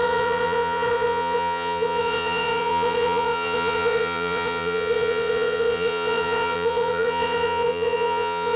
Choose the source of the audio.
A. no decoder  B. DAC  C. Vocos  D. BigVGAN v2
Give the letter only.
C